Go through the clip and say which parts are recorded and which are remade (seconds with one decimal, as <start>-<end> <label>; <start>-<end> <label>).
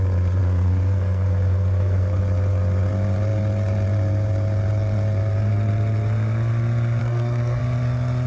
0.0-0.4 recorded; 0.4-2.2 remade; 2.2-7.0 recorded; 7.0-7.6 remade; 7.6-8.3 recorded